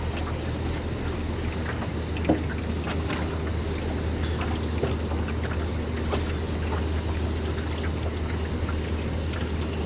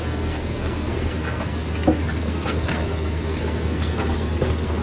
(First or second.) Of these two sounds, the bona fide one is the first